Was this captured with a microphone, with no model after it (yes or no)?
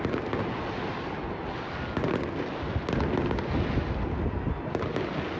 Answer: yes